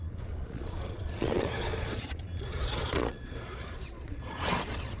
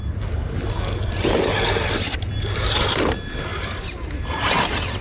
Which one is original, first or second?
second